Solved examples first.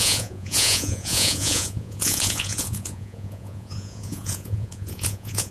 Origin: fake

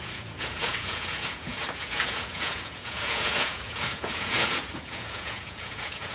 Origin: fake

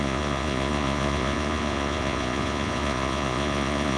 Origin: fake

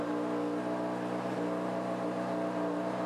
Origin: real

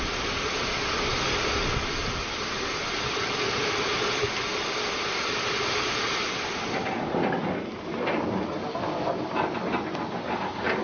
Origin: real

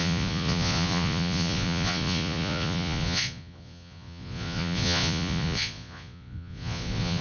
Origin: fake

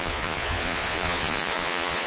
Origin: fake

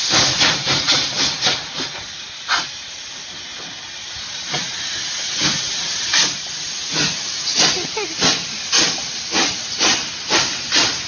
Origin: real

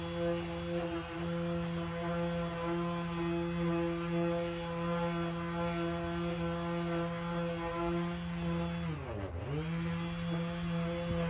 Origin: real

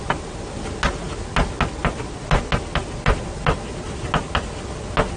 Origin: real